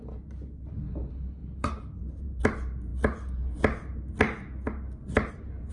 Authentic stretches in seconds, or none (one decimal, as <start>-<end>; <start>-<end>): 0.0-1.4; 2.4-5.7